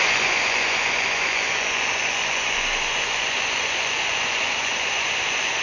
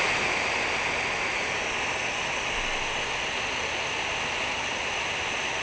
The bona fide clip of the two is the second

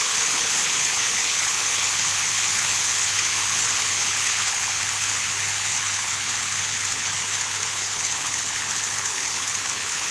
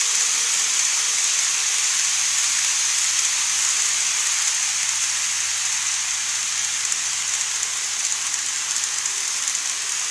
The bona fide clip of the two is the second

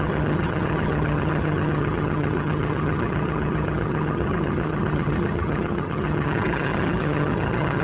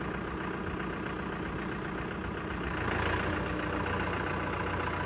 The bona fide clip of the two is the second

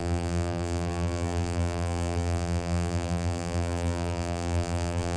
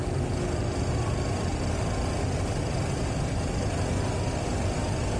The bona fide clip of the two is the second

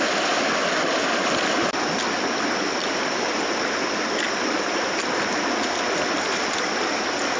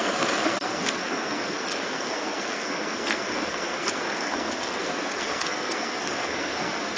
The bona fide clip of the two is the first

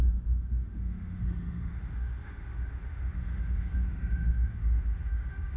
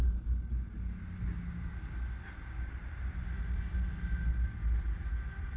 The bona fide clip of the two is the second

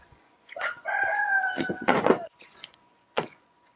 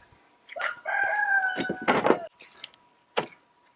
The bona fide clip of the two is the second